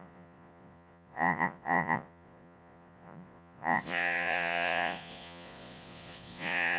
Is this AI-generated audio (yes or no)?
yes